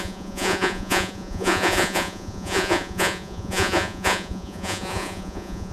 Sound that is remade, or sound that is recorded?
remade